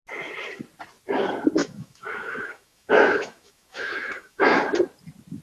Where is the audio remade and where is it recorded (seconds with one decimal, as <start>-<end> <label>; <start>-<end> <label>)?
0.0-1.6 recorded; 1.6-4.6 remade; 4.6-5.4 recorded